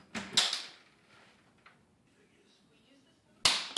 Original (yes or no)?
yes